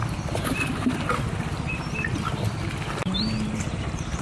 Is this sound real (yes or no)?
yes